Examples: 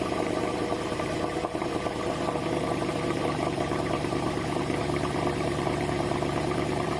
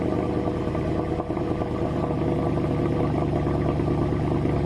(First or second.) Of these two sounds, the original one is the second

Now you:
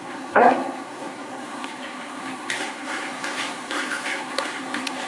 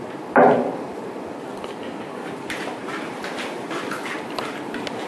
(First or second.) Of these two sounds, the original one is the second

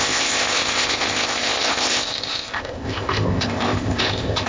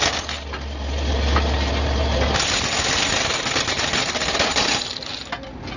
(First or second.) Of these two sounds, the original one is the second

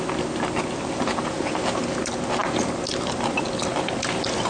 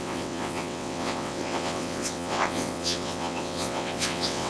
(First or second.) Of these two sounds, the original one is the first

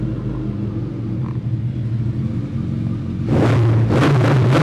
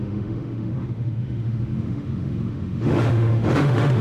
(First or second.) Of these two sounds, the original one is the first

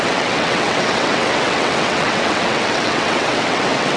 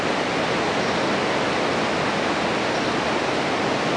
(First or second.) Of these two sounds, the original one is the second